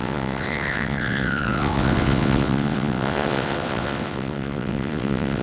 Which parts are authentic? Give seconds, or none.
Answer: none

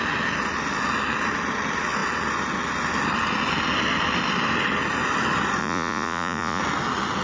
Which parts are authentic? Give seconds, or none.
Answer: 0.0-5.6; 6.6-7.2

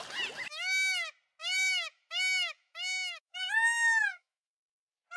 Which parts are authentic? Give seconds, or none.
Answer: 0.0-1.4; 4.5-5.2

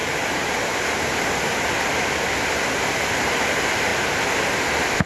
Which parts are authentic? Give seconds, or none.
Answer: 0.0-5.1

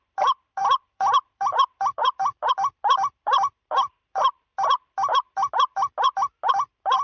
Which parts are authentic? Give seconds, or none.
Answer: 4.5-6.5